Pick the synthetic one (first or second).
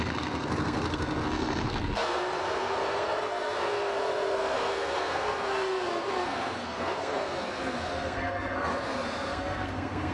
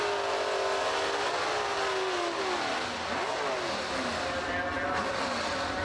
first